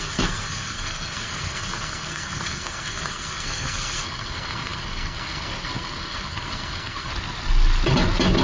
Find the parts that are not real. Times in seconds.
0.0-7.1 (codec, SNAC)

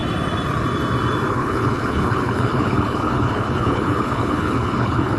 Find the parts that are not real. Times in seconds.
1.3-5.2 (codec, HILCodec)

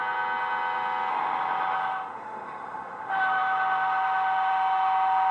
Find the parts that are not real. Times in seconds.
1.1-5.3 (autoencoder, DAC-VAE)

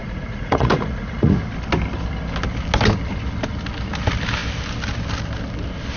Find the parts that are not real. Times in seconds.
0.0-1.3 (vocoder, Vocos)